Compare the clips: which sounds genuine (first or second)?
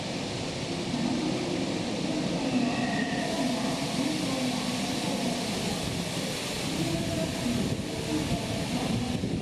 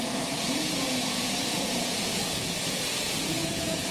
first